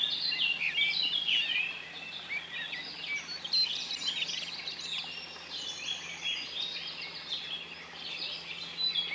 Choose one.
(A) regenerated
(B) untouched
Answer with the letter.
B